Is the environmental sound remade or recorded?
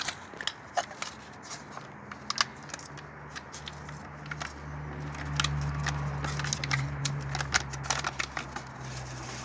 recorded